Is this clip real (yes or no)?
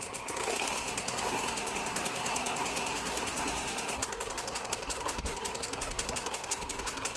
no